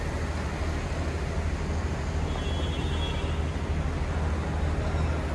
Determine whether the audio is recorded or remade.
recorded